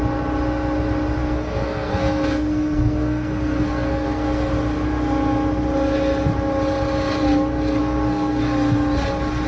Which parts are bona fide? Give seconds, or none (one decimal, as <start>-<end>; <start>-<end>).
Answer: 0.0-1.2; 4.5-7.8; 8.4-9.5